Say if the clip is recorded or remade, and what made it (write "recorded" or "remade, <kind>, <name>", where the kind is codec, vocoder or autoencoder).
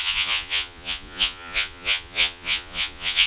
remade, vocoder, Vocos